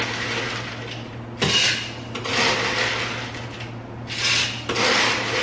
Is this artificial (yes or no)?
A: no